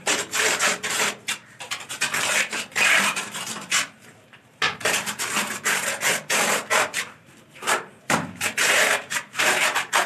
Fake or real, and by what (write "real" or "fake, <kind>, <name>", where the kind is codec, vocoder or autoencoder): fake, vocoder, BigVGAN v2